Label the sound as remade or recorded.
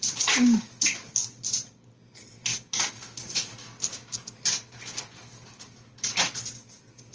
recorded